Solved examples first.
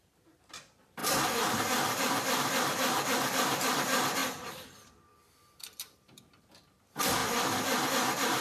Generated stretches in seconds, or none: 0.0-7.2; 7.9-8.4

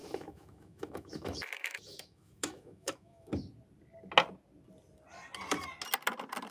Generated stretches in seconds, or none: 0.0-3.3

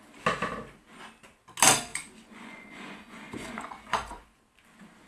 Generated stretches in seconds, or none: 1.9-4.4

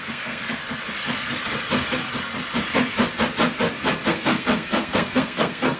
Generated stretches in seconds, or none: 0.0-0.6; 4.1-5.8

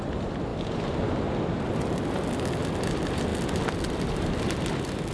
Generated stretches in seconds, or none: none